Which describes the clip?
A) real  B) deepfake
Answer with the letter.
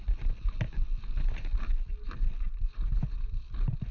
A